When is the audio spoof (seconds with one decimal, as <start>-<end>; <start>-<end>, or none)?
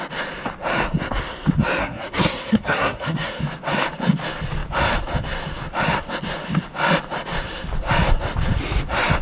1.8-3.4